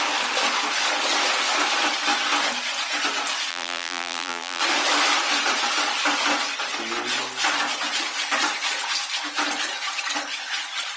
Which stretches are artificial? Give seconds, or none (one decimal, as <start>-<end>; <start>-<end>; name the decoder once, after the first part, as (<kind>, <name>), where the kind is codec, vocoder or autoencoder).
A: 3.5-4.6 (vocoder, BigVGAN v2)